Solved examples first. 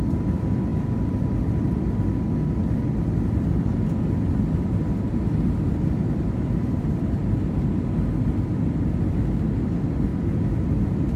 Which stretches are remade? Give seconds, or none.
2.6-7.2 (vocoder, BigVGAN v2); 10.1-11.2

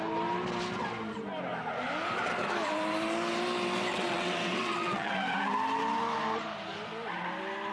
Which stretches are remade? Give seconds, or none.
3.9-5.1 (vocoder, WaveNeXt)

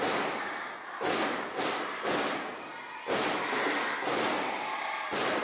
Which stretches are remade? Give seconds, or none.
none

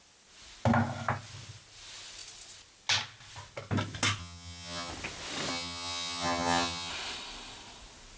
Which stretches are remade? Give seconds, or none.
4.2-4.9 (vocoder, HiFi-GAN); 5.5-6.9

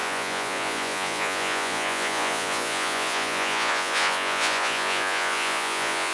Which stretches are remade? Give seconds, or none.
0.0-6.1 (vocoder, Vocos)

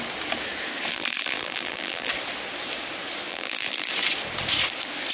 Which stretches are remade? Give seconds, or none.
0.9-2.1 (vocoder, BigVGAN v2); 3.3-3.9

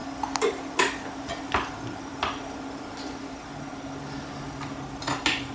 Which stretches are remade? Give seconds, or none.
none